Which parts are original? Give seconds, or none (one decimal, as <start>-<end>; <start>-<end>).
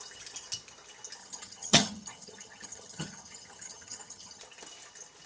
0.0-1.2; 4.4-5.3